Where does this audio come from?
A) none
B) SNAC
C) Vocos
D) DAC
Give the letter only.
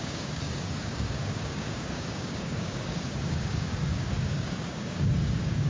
D